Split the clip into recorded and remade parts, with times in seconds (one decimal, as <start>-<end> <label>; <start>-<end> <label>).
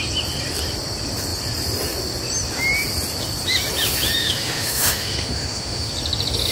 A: 0.0-4.2 recorded; 4.2-5.9 remade; 5.9-6.5 recorded